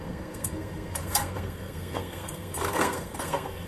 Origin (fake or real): fake